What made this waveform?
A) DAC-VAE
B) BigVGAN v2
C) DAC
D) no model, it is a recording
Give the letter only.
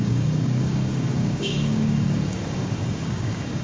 C